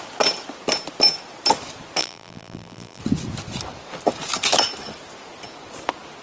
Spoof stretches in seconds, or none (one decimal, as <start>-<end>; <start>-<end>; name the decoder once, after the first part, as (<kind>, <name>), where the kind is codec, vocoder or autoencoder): 2.0-3.0 (vocoder, BigVGAN v2)